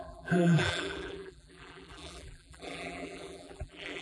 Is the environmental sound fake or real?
fake